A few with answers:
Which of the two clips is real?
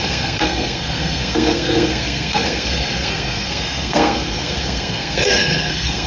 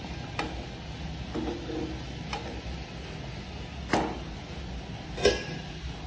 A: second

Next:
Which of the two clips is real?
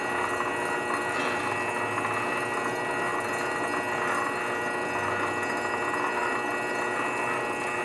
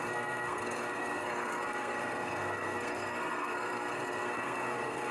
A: first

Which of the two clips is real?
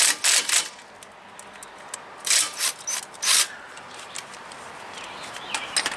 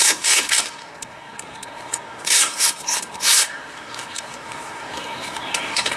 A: first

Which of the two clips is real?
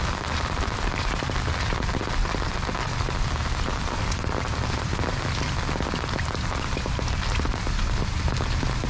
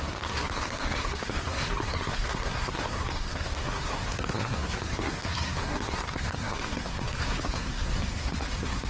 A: first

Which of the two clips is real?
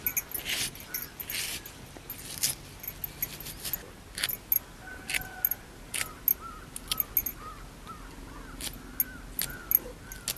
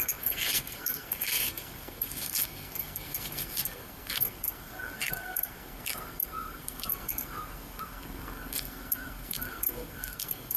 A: first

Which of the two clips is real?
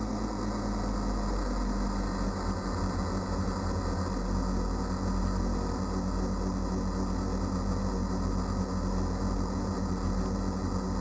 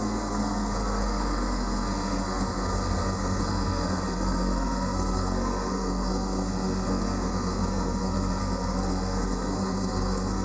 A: first